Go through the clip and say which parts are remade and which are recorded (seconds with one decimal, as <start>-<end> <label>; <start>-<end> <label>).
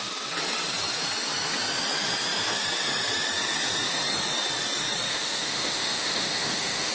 0.0-5.1 recorded; 5.1-6.9 remade